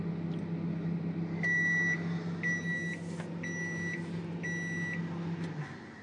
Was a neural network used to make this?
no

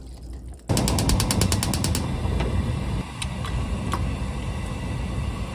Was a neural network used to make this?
no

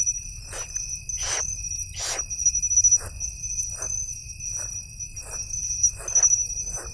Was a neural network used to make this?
no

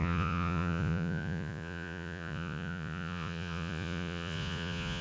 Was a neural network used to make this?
yes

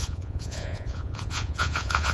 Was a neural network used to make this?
yes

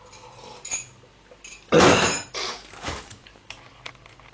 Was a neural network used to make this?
no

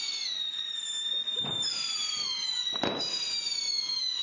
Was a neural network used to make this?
no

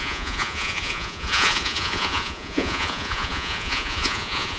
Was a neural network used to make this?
yes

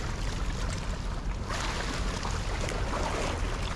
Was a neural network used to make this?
no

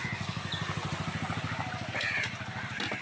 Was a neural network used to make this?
no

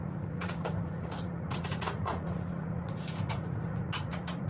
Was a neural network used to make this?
yes